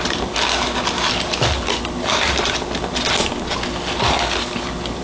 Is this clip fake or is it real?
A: real